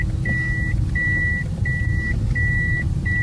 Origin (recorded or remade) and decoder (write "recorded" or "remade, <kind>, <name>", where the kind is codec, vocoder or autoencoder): recorded